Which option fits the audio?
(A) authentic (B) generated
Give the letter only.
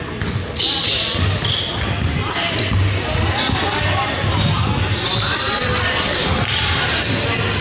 A